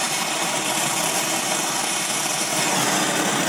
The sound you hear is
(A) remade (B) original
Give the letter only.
A